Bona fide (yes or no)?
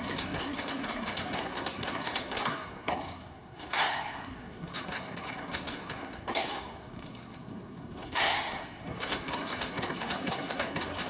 no